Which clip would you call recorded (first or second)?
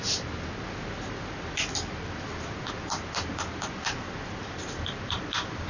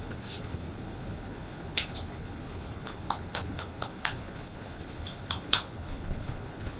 first